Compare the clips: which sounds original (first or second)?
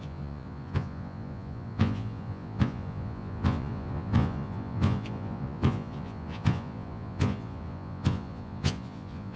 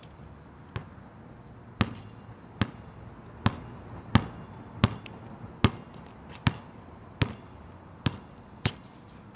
second